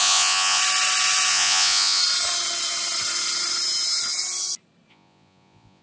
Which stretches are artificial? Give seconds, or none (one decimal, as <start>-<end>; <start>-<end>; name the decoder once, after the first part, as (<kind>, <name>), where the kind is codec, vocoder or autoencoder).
0.0-0.6 (vocoder, Vocos); 1.3-2.0; 4.9-5.8